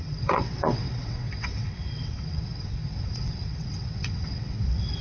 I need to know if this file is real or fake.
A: fake